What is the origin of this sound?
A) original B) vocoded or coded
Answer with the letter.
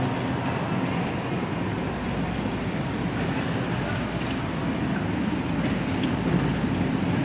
A